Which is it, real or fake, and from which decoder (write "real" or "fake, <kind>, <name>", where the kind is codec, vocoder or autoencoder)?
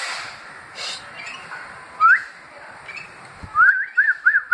real